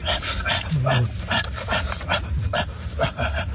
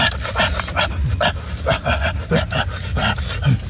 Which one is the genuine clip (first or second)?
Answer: second